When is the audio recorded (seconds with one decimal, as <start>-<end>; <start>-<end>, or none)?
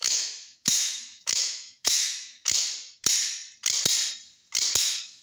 2.7-4.8